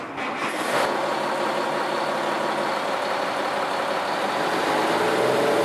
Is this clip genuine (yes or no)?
yes